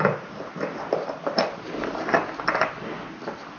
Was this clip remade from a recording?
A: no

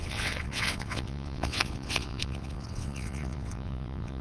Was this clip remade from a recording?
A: yes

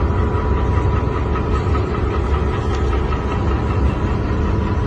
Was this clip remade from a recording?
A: no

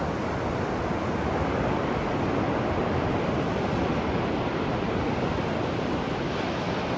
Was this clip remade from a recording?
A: no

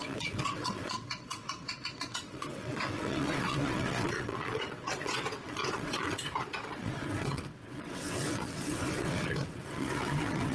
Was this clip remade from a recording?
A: yes